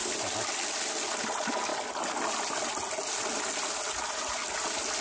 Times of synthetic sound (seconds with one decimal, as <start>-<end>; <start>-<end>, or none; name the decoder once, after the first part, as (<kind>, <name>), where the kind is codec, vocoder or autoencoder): none